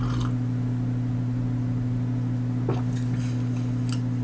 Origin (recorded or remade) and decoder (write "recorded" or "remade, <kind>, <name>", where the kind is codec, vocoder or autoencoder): recorded